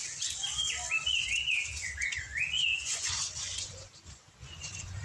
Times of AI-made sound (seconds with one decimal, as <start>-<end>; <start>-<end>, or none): 1.1-5.0